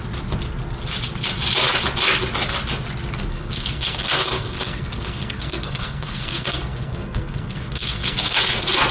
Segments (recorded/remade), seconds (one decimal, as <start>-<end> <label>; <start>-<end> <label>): 0.0-3.3 recorded; 3.3-8.4 remade; 8.4-8.9 recorded